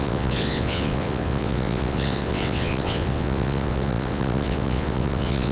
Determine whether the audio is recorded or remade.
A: remade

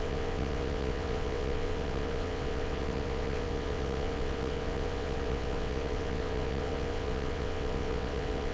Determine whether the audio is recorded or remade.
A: remade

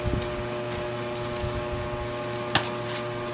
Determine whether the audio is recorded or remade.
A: recorded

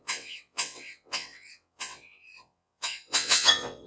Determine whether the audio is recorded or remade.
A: remade